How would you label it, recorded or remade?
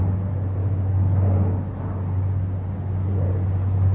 recorded